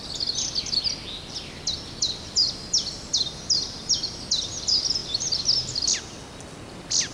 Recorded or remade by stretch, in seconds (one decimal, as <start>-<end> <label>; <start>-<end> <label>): 0.0-7.1 recorded

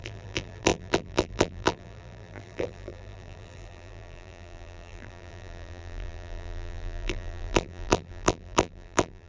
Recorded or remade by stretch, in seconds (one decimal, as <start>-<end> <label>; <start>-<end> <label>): 0.0-9.3 remade

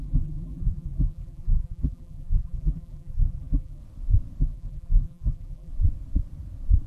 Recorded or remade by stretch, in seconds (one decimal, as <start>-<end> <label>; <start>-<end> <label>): 0.0-3.8 remade; 3.8-4.4 recorded; 4.4-5.7 remade; 5.7-6.9 recorded